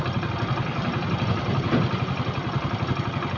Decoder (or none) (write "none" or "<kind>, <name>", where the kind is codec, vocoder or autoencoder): none